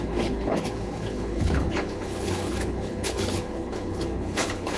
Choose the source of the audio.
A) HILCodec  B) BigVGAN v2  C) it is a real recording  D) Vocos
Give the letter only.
A